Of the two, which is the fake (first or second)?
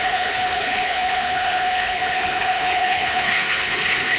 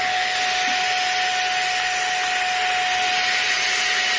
first